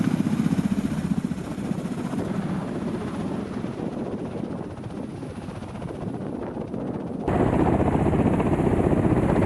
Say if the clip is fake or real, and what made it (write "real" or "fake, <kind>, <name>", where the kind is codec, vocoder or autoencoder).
real